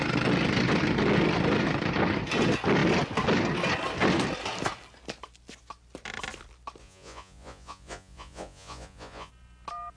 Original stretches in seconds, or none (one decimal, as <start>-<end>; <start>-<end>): 0.0-6.8; 9.3-10.0

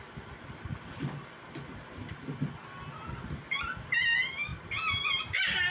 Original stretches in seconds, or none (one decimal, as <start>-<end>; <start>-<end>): 0.0-5.7